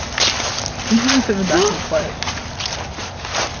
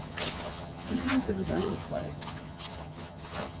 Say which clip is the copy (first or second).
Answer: second